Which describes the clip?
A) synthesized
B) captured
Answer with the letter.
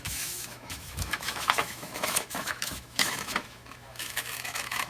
A